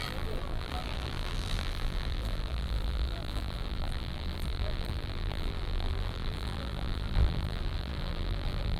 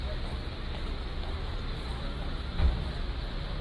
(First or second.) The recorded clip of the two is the second